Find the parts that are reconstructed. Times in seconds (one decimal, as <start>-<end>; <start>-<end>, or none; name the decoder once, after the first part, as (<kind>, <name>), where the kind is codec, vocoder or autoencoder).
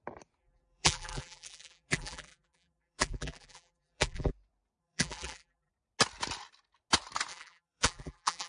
0.4-4.3 (vocoder, BigVGAN v2); 4.8-5.7; 7.3-8.5